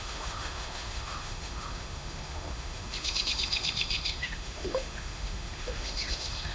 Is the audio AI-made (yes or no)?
yes